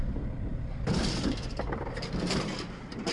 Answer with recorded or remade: remade